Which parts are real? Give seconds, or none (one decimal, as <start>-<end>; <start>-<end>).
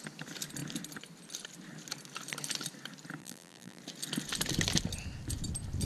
0.0-3.2; 3.8-5.8